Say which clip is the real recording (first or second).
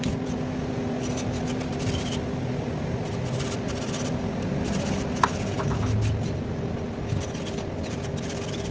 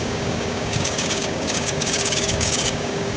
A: first